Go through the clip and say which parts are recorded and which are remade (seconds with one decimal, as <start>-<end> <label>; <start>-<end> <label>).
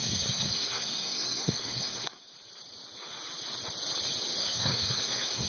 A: 0.0-2.2 remade; 2.2-4.4 recorded; 4.4-5.5 remade